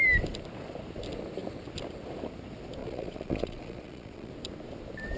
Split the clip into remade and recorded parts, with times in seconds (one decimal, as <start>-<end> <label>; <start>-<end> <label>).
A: 0.0-2.8 recorded; 2.8-4.3 remade; 4.3-5.2 recorded

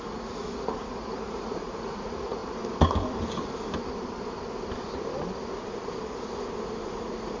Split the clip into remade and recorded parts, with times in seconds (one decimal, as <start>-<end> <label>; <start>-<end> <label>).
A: 0.0-2.4 remade; 2.4-6.8 recorded; 6.8-7.4 remade

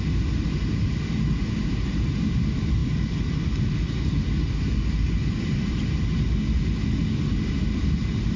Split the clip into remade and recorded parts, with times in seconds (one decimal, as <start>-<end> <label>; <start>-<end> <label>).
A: 0.0-8.4 recorded

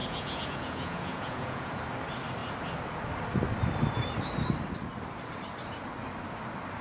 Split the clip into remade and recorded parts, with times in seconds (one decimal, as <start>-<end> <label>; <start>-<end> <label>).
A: 0.0-1.8 remade; 1.8-6.8 recorded

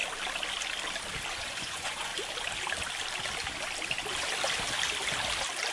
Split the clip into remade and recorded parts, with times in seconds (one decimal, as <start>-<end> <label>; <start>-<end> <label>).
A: 0.0-1.3 recorded; 1.3-2.1 remade; 2.1-5.7 recorded

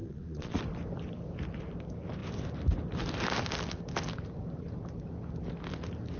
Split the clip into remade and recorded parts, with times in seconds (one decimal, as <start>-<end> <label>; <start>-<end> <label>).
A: 0.0-0.6 remade; 0.6-6.2 recorded

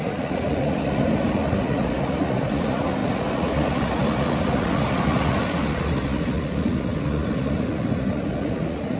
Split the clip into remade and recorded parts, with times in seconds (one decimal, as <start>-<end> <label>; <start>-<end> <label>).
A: 0.0-9.0 remade